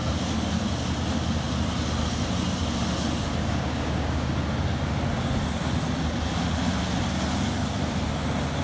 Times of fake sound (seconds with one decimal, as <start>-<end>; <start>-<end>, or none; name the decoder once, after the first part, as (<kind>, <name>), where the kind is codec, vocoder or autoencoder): 3.4-4.3 (codec, DAC)